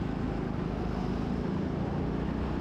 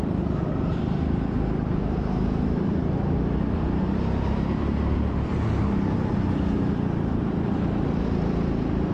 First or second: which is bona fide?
first